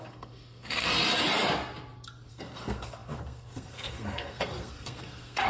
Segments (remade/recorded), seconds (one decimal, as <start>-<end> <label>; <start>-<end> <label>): 0.0-0.9 remade; 0.9-2.3 recorded; 2.3-5.5 remade